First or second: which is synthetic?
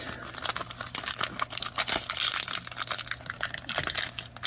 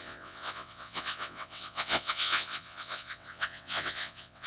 second